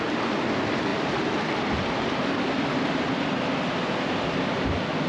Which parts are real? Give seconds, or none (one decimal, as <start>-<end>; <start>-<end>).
0.0-5.1